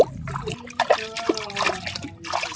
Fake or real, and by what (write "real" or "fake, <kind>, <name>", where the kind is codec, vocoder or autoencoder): real